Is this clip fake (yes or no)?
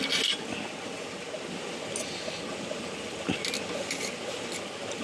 no